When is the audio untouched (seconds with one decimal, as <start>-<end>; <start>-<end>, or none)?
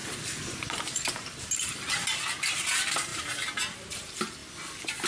0.0-0.7; 4.4-5.1